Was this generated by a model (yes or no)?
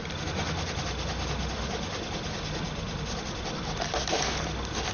no